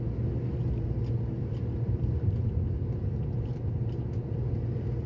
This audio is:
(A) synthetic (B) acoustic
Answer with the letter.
B